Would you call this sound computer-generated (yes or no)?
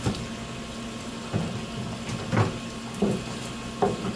no